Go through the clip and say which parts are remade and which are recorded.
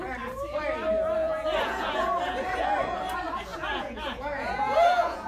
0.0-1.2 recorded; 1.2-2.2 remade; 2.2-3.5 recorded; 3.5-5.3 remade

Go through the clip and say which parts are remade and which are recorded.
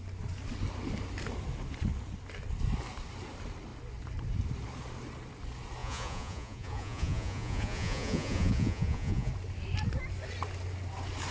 0.0-5.8 recorded; 5.8-9.3 remade; 9.3-11.3 recorded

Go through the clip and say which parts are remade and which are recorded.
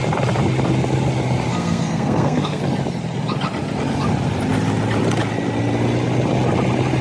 0.0-1.5 recorded; 1.5-2.6 remade; 2.6-7.0 recorded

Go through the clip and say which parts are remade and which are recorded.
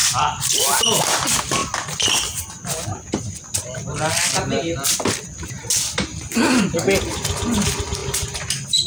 0.0-0.8 remade; 0.8-1.6 recorded; 1.6-5.5 remade; 5.5-8.9 recorded